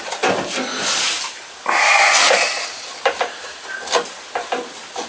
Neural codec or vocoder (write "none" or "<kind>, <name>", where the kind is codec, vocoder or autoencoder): none